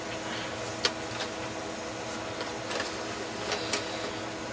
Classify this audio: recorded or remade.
recorded